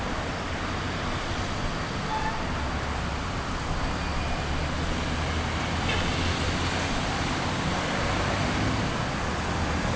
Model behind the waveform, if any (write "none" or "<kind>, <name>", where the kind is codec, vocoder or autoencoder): none